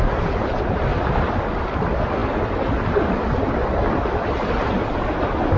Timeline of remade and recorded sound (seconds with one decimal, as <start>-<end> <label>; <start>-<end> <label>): 0.0-5.6 recorded